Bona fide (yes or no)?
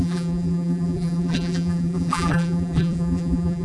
no